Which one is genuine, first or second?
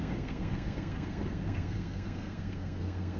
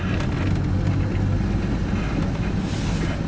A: second